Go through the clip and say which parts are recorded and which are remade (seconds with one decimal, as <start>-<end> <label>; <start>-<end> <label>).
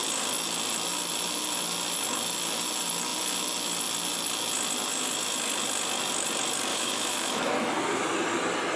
0.0-6.7 recorded; 6.7-7.8 remade; 7.8-8.8 recorded